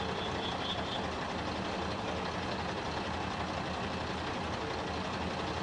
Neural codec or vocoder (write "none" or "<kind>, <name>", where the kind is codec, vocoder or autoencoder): none